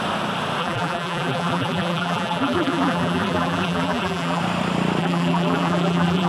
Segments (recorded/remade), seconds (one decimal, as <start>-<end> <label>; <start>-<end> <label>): 0.0-0.6 recorded; 0.6-4.4 remade; 4.4-5.0 recorded; 5.0-6.3 remade